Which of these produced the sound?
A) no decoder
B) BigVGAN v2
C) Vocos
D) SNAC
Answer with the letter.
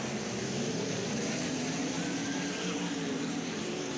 B